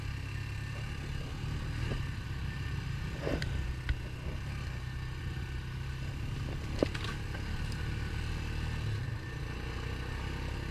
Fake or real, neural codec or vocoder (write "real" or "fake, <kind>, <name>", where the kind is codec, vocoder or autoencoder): real